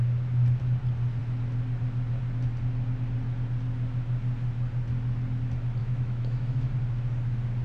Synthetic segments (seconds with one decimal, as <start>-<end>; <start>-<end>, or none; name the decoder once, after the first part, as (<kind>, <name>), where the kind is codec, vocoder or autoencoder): 5.8-6.7 (autoencoder, DAC-VAE)